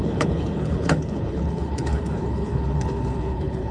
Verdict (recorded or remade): remade